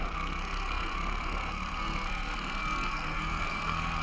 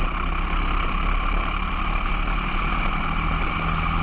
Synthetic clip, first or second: first